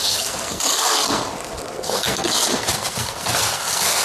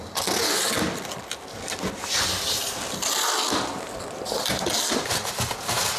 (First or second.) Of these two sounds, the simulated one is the first